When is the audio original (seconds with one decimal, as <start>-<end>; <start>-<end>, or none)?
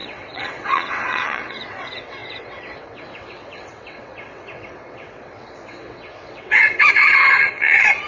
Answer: none